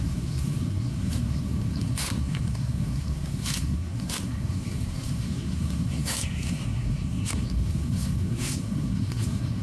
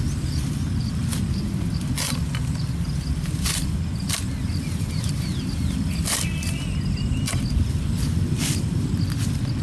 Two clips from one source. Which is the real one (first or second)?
second